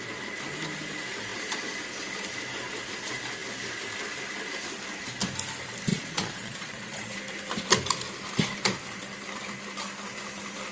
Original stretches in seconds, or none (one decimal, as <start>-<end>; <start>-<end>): 0.0-5.9; 7.1-10.7